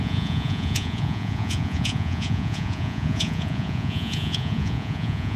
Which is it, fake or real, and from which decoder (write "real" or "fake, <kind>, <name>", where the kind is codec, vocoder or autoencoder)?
fake, vocoder, Vocos